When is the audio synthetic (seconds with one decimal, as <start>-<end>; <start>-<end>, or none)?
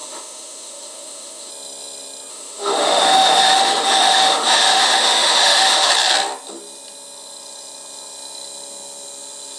0.0-1.5; 2.3-5.9